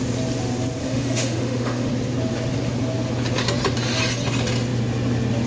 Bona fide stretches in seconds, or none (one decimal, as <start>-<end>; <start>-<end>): 0.0-0.8; 1.9-5.5